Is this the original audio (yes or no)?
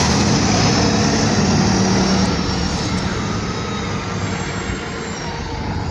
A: yes